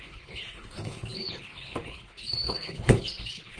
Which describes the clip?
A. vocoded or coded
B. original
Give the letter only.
A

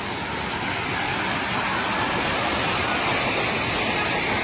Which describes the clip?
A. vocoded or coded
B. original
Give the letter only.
B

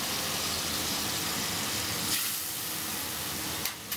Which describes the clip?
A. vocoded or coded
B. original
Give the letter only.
B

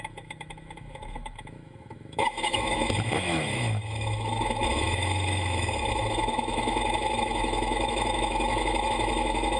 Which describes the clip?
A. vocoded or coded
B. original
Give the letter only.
A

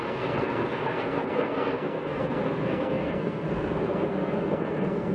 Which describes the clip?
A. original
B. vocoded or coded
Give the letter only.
B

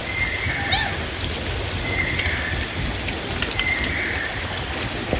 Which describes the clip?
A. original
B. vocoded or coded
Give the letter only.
A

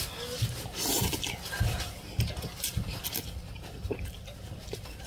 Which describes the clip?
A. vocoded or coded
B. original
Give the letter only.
B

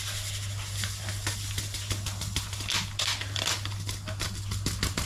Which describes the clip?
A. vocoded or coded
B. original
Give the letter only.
B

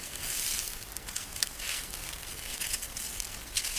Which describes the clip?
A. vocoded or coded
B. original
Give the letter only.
A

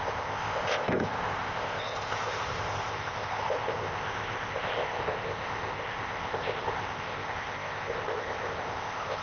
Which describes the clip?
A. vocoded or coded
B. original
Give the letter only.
A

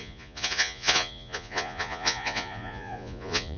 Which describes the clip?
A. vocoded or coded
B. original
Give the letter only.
A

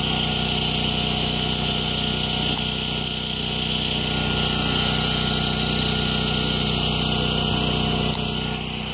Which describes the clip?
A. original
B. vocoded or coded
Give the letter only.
A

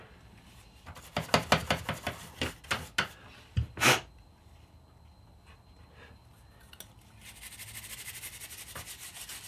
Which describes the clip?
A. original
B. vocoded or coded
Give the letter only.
A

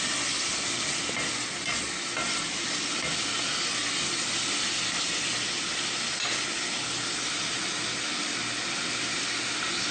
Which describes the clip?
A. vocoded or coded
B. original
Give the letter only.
B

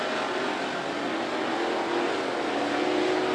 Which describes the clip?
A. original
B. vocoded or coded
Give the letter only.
A